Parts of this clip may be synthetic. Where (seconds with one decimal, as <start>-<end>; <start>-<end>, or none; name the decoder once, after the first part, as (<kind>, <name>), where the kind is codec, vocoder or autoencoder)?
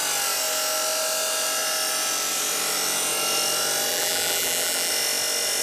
3.9-4.9 (vocoder, BigVGAN v2)